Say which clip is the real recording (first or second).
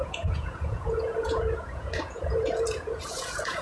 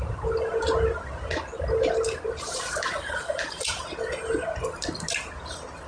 second